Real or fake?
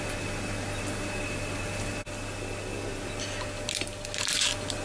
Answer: real